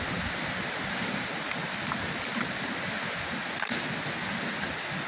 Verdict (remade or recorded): recorded